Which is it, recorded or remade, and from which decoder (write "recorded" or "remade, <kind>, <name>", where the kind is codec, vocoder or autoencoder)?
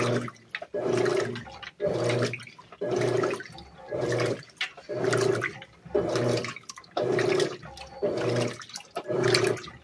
recorded